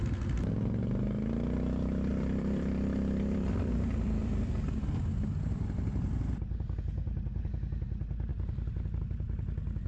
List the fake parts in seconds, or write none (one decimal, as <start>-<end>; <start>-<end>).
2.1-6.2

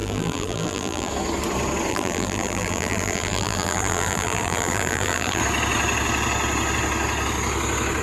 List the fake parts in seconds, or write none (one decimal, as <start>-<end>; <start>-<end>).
0.0-1.1; 1.9-5.4

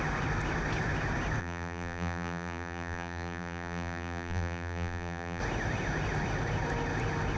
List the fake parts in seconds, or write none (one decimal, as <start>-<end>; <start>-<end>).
1.4-5.4

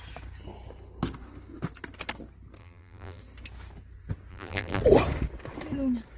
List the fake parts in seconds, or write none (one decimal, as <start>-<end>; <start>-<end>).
2.6-3.2; 4.3-4.8

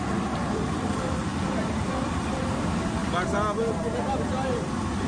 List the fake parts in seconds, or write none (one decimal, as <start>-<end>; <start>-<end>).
0.0-1.3; 2.1-3.0; 3.6-5.1

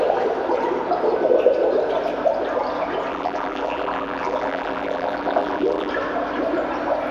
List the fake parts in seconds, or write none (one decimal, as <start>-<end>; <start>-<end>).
3.1-5.9

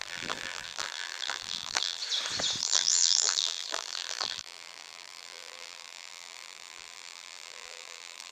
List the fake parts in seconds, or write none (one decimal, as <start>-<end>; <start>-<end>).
0.0-2.0; 2.6-8.3